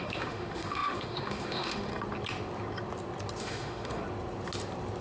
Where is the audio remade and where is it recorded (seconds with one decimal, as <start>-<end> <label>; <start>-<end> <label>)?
0.0-1.9 remade; 1.9-3.4 recorded; 3.4-4.0 remade; 4.0-5.0 recorded